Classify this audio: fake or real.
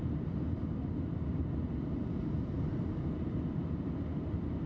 real